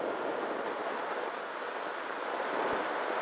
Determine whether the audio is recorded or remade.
recorded